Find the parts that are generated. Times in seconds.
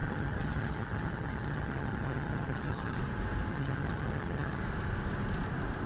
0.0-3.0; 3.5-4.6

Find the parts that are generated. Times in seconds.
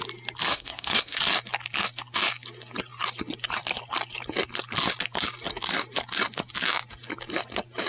0.5-1.2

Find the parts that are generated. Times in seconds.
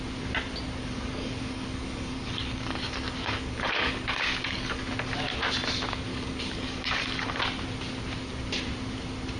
0.8-4.9; 6.1-7.4